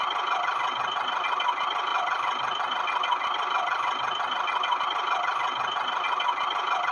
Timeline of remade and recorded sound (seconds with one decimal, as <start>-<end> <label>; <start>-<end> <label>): 0.0-1.9 recorded; 1.9-4.8 remade; 4.8-6.9 recorded